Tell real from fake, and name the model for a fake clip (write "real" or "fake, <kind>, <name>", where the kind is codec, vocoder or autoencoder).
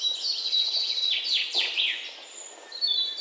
real